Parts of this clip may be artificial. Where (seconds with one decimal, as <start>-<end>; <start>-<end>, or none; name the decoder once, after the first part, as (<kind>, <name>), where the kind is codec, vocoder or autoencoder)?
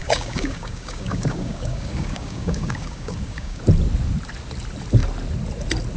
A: 0.0-3.6 (codec, DAC)